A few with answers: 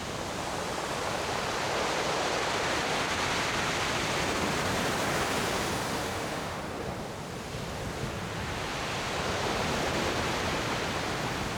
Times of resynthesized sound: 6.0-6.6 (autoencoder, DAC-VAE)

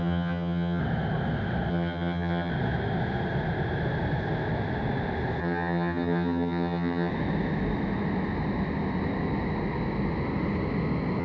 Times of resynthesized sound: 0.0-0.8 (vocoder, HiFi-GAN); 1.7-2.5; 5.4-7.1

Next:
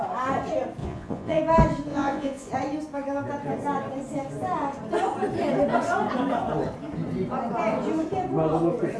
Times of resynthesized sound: 0.8-1.4 (vocoder, Vocos); 1.9-2.5

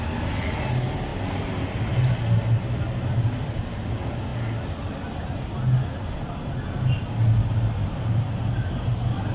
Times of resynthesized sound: none

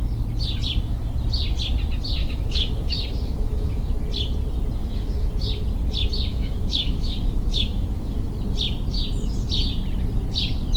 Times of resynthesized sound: 2.2-3.9 (autoencoder, DAC-VAE); 4.8-5.3; 6.3-8.3

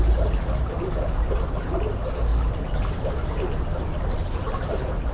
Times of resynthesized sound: 0.0-2.3 (vocoder, BigVGAN v2); 3.0-5.1